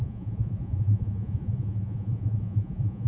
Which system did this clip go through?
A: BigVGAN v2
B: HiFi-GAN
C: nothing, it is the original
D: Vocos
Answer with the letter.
D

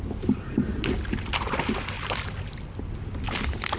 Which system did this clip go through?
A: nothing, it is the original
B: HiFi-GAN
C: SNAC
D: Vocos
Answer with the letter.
A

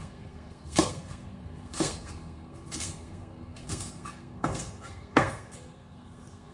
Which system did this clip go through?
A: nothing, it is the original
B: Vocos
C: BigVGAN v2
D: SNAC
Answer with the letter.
D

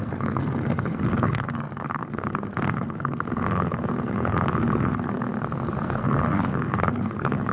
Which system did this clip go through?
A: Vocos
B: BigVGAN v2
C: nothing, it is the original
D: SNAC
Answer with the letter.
D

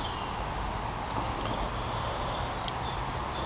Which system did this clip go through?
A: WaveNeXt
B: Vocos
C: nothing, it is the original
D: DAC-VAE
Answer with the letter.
C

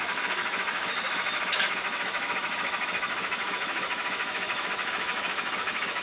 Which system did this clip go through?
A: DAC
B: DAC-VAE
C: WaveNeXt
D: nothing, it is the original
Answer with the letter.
B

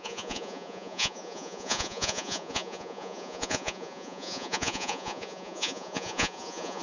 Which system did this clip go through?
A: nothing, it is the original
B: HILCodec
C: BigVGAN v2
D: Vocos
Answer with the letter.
D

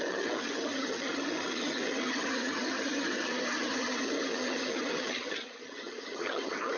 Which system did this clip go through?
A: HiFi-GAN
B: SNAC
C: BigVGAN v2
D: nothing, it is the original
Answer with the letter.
A